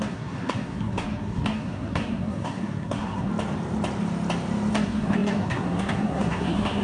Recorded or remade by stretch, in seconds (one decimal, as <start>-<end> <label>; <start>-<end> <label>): 0.0-3.3 remade; 3.3-4.7 recorded; 4.7-6.8 remade